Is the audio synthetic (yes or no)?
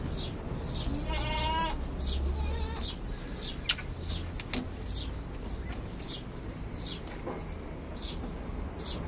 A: no